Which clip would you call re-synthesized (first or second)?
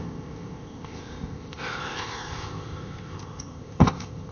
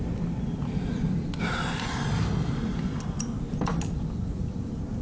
first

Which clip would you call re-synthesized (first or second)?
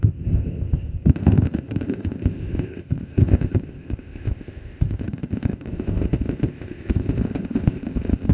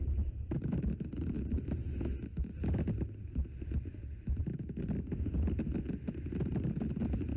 first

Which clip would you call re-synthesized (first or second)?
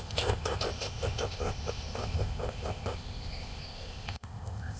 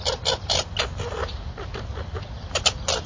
first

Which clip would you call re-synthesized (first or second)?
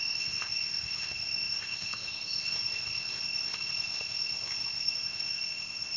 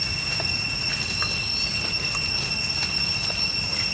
first